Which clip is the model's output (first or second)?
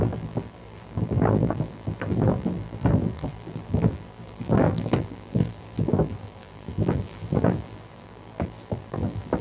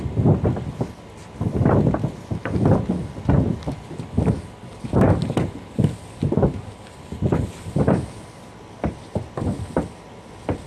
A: first